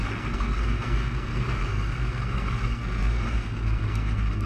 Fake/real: fake